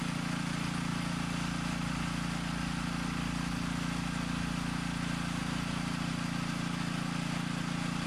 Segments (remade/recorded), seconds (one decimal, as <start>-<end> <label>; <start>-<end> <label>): 0.0-5.4 recorded; 5.4-6.1 remade; 6.1-8.1 recorded